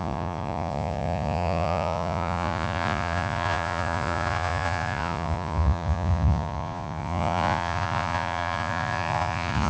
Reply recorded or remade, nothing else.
remade